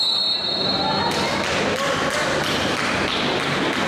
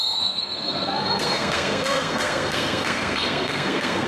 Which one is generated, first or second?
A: second